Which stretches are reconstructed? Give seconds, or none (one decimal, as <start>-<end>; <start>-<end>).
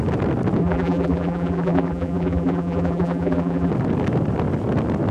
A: 0.6-3.7